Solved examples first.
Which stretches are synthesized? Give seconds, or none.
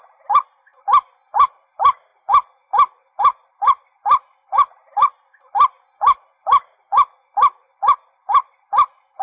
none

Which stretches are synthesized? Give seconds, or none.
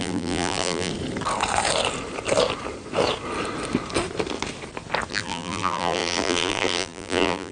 0.0-0.9 (vocoder, BigVGAN v2); 5.1-7.5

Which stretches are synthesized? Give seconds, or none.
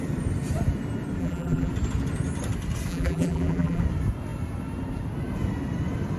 1.2-1.7 (vocoder, BigVGAN v2); 2.9-3.8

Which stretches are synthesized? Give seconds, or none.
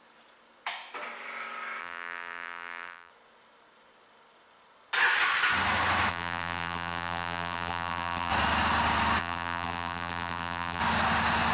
1.8-3.1 (vocoder, BigVGAN v2); 6.1-8.3; 9.2-10.8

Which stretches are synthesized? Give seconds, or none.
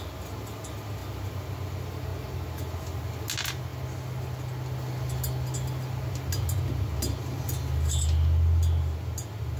none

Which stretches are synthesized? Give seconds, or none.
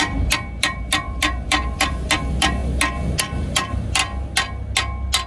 0.0-2.6 (vocoder, BigVGAN v2); 3.2-4.0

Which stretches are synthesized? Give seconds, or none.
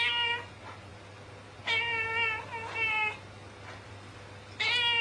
none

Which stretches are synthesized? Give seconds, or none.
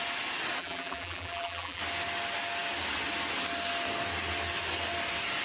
0.6-1.8 (vocoder, BigVGAN v2)